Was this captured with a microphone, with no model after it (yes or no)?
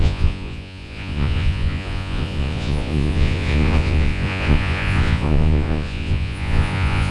no